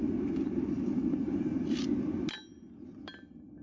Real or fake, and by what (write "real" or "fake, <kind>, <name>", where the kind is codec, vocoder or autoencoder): fake, vocoder, BigVGAN v2